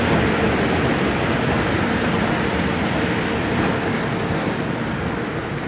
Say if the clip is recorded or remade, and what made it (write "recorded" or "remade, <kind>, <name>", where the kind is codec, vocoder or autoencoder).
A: recorded